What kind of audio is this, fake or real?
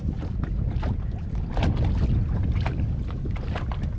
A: real